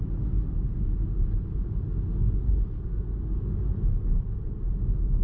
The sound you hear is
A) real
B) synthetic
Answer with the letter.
A